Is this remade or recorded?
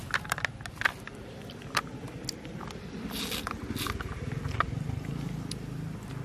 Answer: recorded